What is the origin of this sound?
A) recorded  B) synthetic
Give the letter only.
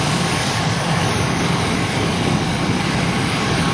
B